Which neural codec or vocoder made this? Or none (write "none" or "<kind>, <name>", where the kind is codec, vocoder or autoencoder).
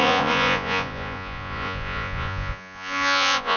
vocoder, Vocos